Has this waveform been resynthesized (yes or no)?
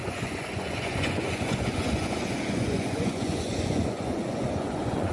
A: yes